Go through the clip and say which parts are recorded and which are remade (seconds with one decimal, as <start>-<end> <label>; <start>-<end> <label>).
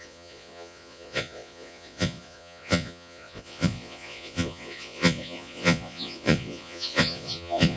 0.0-7.8 remade